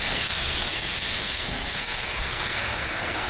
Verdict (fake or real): fake